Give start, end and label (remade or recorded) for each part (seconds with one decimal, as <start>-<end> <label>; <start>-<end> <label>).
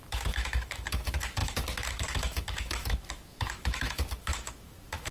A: 0.0-5.1 remade